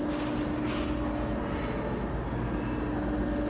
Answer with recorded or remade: recorded